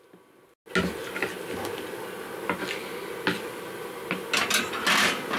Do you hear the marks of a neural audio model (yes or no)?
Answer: no